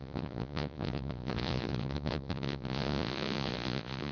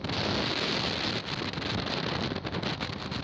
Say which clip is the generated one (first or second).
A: first